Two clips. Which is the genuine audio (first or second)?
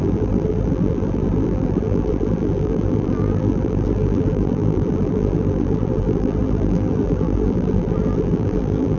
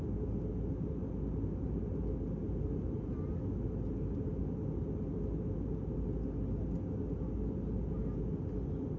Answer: second